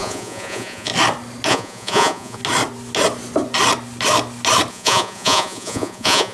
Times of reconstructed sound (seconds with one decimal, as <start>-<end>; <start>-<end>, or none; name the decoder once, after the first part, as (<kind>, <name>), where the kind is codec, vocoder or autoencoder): 0.0-0.9 (vocoder, Vocos); 1.5-2.4; 4.7-6.3